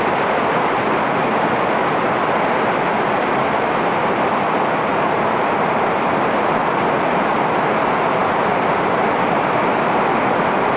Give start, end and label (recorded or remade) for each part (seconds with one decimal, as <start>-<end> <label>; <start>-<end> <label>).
0.0-1.8 recorded; 1.8-3.1 remade; 3.1-4.0 recorded; 4.0-4.8 remade; 4.8-10.8 recorded